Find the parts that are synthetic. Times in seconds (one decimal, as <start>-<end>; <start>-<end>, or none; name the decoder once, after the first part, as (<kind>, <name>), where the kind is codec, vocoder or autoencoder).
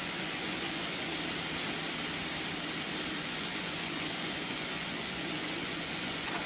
0.0-1.1 (vocoder, Vocos); 3.2-6.5